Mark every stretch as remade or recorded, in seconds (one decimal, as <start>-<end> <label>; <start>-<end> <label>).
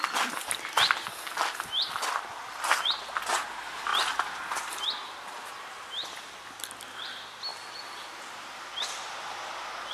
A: 0.0-9.9 recorded